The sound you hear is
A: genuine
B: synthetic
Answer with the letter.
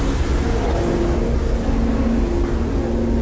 A